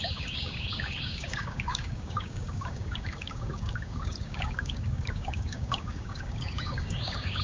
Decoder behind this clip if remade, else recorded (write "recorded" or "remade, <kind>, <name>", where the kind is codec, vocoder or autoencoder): remade, codec, DAC